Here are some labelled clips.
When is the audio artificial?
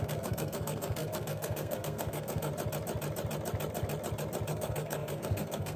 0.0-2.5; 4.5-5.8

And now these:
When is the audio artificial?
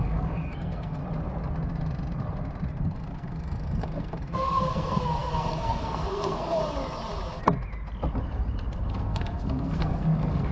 0.0-1.0; 2.7-6.6; 8.9-10.5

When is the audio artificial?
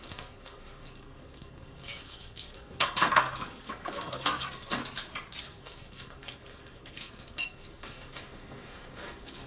0.0-4.8; 5.4-9.5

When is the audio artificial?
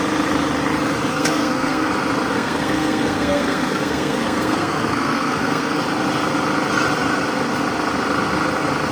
1.1-1.9; 2.3-5.8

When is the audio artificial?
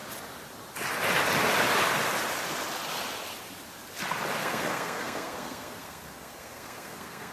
4.4-7.3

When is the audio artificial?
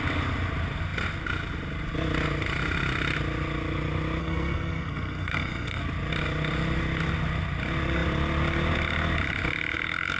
4.2-5.8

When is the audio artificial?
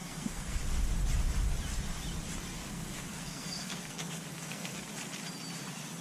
0.0-0.6; 2.5-4.9